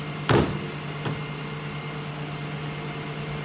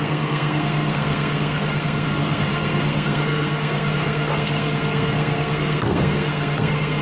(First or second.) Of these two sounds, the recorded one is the first